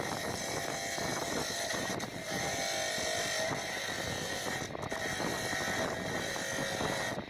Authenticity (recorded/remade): recorded